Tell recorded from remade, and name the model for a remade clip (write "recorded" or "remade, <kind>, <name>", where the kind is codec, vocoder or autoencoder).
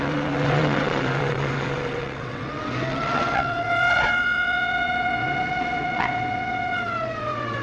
remade, vocoder, WaveNeXt